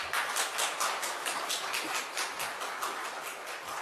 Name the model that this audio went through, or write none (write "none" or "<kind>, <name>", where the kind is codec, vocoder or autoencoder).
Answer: none